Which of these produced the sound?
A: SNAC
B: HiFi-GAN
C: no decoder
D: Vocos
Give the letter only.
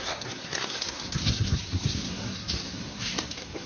A